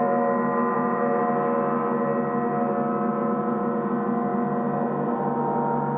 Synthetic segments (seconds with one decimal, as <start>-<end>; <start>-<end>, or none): 0.7-1.2; 3.1-3.9